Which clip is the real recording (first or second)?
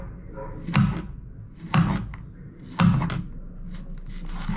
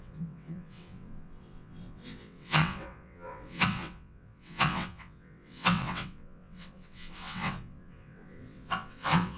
first